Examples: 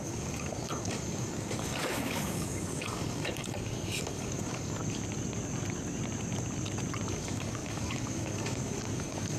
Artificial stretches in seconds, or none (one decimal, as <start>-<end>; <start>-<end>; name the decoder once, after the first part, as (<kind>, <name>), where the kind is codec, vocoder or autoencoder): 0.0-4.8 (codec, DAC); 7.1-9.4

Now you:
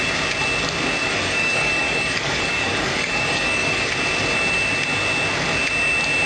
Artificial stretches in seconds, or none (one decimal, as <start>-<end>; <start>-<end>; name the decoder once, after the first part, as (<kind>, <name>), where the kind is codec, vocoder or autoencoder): 1.0-3.9 (codec, DAC)

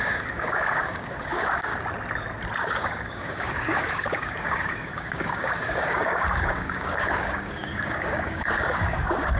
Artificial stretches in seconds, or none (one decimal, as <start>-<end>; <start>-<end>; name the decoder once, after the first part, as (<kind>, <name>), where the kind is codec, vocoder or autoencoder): 0.0-1.7 (codec, DAC); 2.6-9.4

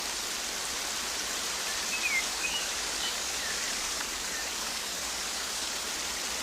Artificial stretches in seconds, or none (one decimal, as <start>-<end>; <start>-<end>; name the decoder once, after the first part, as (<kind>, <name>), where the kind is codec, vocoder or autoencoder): 2.3-5.8 (codec, DAC)

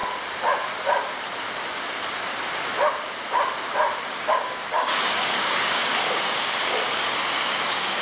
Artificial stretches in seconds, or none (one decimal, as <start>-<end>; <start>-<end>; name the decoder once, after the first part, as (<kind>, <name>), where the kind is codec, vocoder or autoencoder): 4.1-8.0 (codec, DAC)

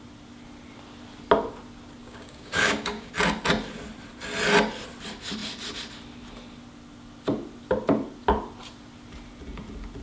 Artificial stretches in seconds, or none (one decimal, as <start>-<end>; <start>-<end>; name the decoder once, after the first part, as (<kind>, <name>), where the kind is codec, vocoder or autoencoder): 2.0-3.1 (codec, DAC)

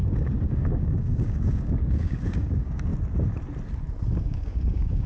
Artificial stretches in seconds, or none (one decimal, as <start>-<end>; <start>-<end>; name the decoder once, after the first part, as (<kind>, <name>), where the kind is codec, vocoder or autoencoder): 0.0-2.9 (codec, DAC); 4.2-5.1